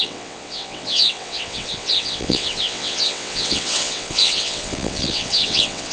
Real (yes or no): no